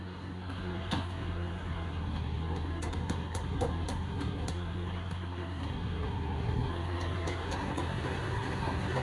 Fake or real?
fake